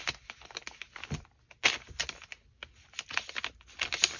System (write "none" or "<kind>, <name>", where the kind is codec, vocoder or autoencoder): none